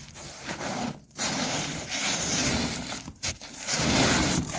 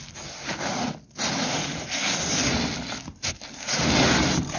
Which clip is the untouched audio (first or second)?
second